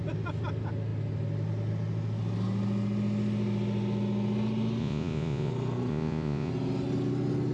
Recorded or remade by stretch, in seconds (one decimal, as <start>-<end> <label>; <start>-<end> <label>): 0.0-4.8 recorded; 4.8-5.5 remade; 5.5-5.9 recorded; 5.9-6.5 remade; 6.5-7.5 recorded